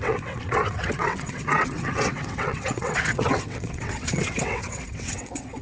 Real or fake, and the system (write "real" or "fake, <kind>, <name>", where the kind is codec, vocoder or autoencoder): fake, vocoder, WaveNeXt